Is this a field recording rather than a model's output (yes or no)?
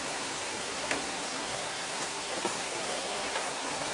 no